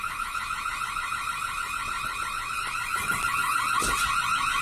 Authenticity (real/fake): real